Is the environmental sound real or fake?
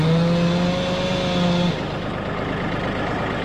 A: real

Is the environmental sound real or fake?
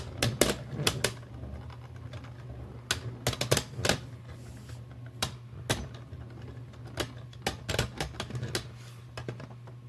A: real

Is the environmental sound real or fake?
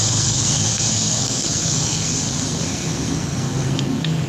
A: fake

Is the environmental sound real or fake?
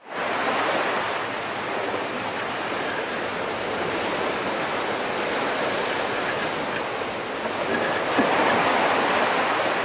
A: real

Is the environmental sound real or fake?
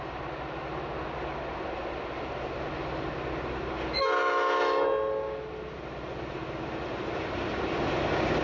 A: real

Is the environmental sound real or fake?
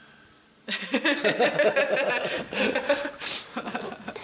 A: real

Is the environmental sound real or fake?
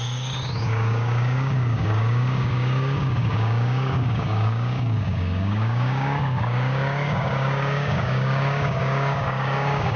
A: fake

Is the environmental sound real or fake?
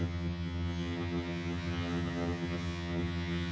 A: fake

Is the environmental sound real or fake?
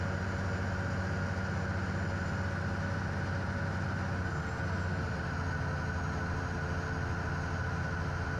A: real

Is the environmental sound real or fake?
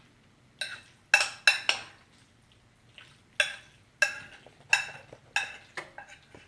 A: real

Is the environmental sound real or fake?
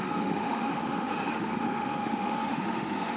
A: fake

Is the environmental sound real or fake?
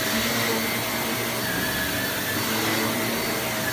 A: real